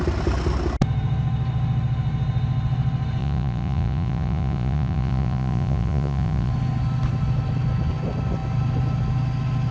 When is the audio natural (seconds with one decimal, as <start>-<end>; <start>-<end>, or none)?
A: 0.0-3.2; 6.5-9.7